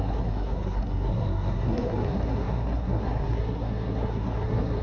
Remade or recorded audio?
remade